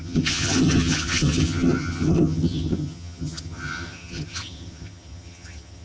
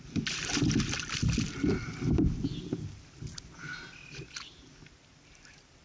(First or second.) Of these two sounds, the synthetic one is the first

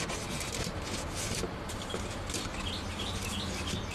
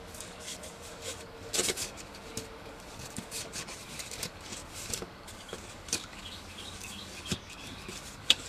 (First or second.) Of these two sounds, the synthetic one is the second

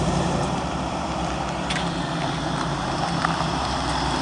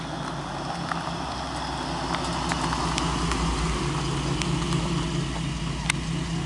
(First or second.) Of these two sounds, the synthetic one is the first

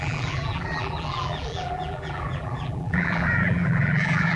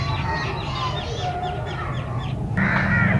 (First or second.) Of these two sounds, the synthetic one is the first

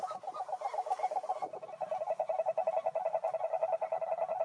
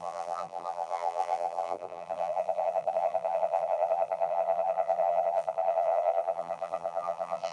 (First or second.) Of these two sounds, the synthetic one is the second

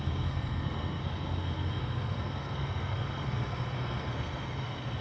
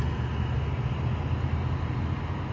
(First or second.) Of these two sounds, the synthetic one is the first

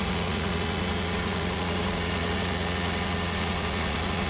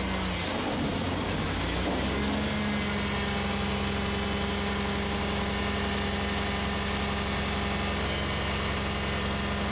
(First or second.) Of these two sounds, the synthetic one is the first